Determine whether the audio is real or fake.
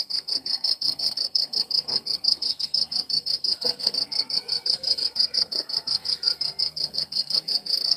fake